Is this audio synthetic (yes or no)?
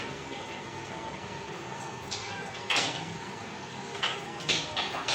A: yes